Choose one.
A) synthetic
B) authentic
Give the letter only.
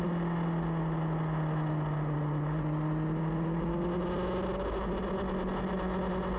B